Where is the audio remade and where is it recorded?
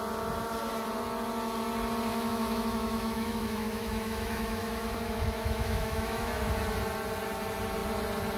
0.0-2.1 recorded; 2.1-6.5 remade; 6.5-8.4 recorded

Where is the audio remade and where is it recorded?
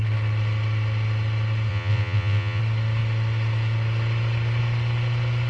0.0-1.7 recorded; 1.7-2.6 remade; 2.6-5.5 recorded